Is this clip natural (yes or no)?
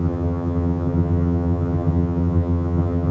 no